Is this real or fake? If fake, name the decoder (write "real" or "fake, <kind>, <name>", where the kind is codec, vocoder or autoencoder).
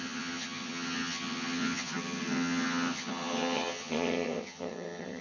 fake, vocoder, HiFi-GAN